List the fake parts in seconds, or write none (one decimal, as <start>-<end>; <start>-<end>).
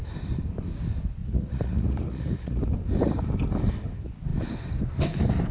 1.2-2.6